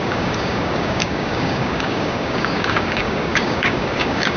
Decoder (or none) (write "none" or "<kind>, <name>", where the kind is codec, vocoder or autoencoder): codec, DAC